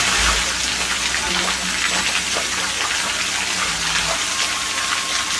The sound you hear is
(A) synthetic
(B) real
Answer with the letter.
B